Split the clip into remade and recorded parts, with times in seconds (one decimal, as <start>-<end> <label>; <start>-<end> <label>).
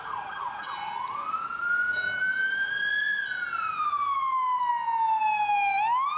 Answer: 0.0-6.2 recorded